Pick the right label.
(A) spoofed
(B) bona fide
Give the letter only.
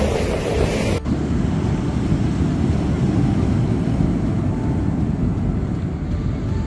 B